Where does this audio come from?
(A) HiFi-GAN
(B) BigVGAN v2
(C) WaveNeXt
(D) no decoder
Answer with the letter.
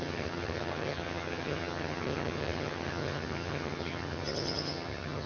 A